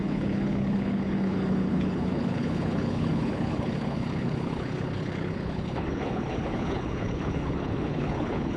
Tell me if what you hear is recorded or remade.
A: remade